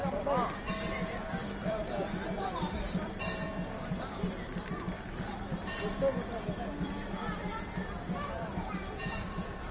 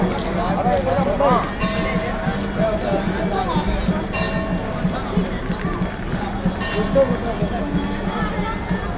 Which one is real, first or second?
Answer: second